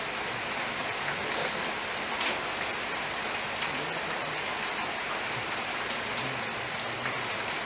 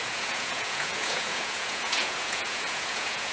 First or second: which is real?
first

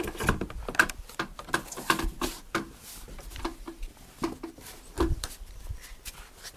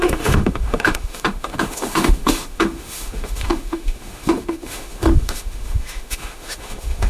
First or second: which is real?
first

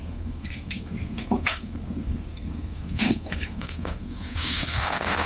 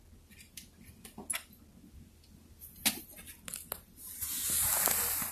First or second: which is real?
second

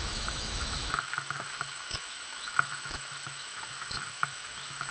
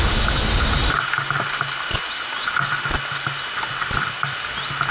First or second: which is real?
second